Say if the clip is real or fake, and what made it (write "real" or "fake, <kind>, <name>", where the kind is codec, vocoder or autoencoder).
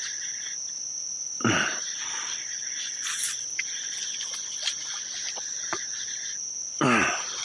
real